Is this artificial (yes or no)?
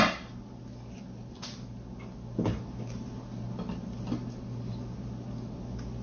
no